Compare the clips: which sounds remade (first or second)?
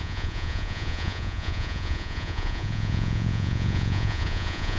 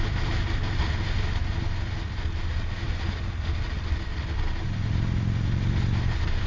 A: first